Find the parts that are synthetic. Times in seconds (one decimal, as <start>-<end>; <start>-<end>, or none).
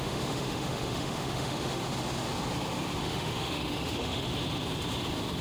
0.0-1.8; 3.0-4.3